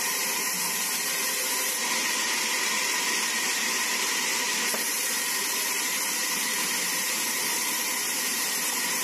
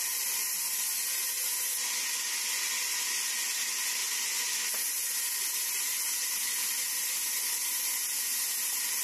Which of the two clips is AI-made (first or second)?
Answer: first